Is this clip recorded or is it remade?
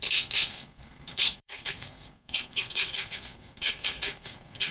remade